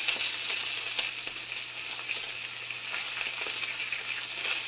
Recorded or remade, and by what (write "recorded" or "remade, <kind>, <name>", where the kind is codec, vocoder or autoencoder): recorded